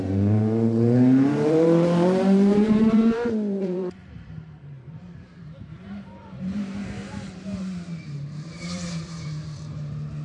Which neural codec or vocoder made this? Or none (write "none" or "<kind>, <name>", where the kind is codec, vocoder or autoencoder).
vocoder, BigVGAN v2